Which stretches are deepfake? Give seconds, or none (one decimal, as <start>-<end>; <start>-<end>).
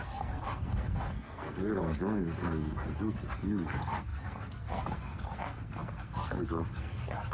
0.0-7.3